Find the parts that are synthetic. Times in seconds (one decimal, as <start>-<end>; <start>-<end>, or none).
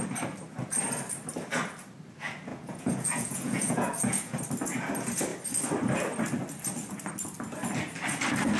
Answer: 2.5-4.4